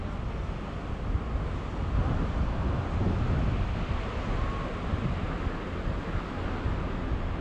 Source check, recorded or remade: recorded